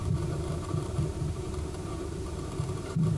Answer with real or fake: fake